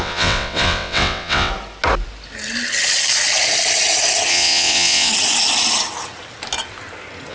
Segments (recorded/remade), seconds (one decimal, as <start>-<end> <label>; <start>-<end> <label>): 0.0-1.5 remade; 1.5-4.3 recorded; 4.3-5.1 remade; 5.1-7.3 recorded